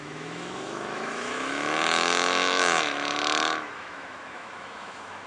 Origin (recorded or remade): remade